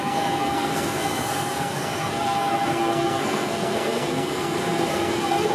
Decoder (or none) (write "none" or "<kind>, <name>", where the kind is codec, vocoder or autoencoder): codec, SNAC